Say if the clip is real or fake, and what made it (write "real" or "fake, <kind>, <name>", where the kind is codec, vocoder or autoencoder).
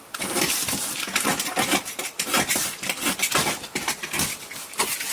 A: fake, vocoder, BigVGAN v2